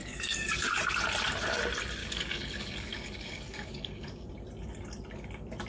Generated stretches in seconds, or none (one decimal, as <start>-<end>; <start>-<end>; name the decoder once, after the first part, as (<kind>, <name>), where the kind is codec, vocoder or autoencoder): 0.0-0.8 (codec, DAC); 2.0-4.3